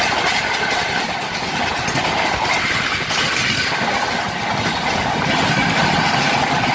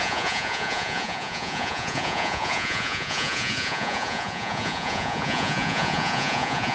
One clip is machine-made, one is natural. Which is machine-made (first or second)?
second